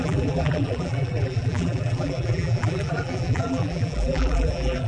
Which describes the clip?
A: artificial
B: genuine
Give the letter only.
A